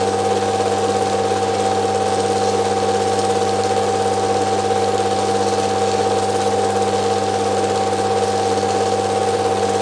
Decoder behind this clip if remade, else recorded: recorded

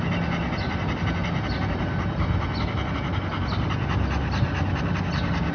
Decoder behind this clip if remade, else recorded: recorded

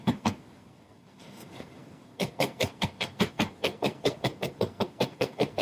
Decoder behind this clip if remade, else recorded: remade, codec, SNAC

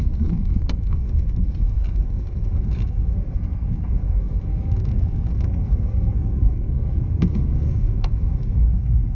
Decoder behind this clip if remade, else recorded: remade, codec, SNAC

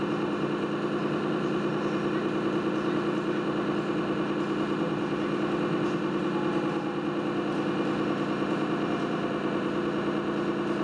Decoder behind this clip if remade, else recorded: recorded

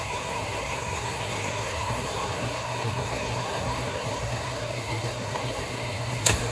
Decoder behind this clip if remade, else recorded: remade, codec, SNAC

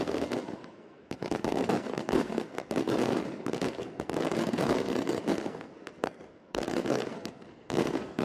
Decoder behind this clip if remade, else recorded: remade, codec, SNAC